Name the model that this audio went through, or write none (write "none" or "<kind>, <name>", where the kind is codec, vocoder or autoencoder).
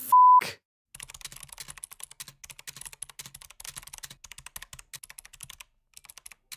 none